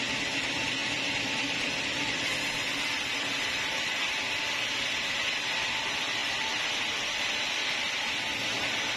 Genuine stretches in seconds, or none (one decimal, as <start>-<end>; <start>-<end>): 0.0-0.8; 3.9-6.2; 7.2-9.0